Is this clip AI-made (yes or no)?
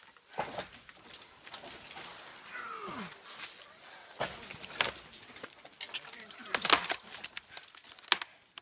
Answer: no